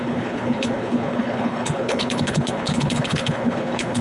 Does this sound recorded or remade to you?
remade